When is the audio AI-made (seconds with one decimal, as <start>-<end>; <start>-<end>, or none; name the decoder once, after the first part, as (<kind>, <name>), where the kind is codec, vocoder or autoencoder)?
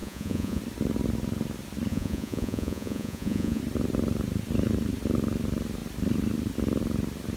0.0-0.6 (vocoder, Vocos); 1.9-3.6